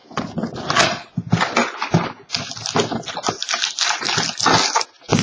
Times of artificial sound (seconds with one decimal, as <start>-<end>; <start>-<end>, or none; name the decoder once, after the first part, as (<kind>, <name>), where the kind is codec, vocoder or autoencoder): none